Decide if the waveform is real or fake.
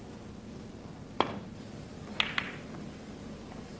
real